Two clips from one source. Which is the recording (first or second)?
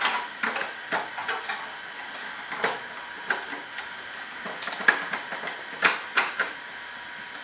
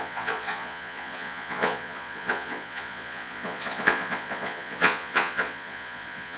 first